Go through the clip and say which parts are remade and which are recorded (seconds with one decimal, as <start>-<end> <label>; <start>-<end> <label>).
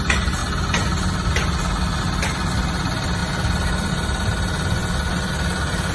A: 0.0-5.9 recorded